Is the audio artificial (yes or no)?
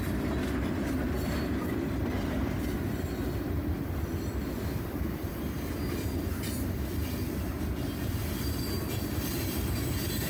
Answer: no